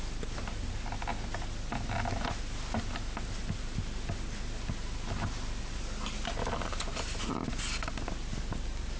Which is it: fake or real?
real